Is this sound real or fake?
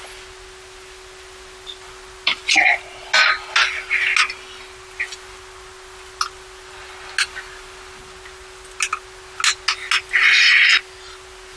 real